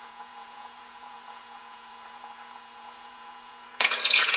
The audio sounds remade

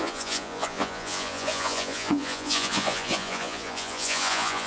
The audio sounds remade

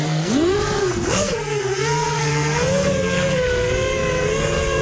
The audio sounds remade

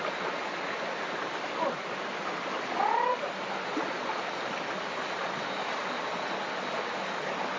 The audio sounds recorded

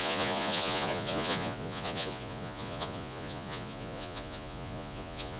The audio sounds remade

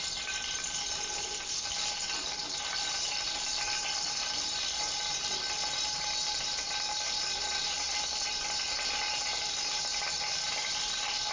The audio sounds recorded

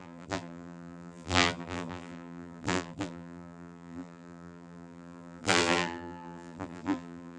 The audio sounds remade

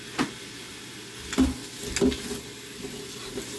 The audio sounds recorded